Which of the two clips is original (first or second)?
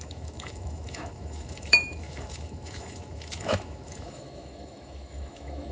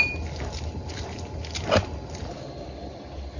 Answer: second